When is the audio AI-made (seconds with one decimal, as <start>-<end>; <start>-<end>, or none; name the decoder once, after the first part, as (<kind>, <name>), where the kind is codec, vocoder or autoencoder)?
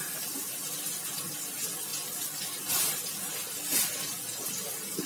none